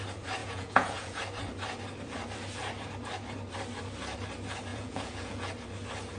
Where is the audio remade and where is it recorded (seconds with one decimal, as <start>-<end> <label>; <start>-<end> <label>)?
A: 0.0-0.4 recorded; 0.4-1.2 remade; 1.2-4.7 recorded; 4.7-5.5 remade; 5.5-6.2 recorded